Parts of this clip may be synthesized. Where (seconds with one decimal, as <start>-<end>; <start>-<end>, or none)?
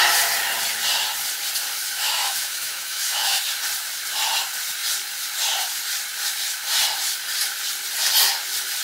1.8-3.4